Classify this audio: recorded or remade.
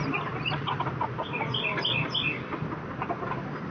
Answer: recorded